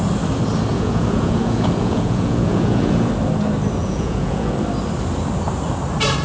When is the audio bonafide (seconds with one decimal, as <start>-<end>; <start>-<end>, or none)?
0.0-0.7; 3.1-3.8; 4.5-6.2